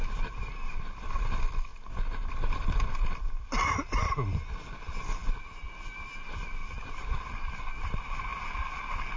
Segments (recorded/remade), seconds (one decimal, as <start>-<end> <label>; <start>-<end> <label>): 0.0-9.2 recorded